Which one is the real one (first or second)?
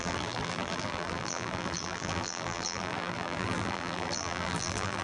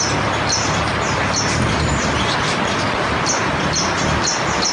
second